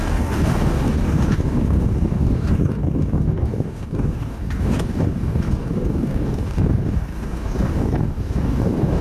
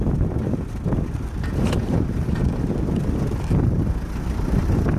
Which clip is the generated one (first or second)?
first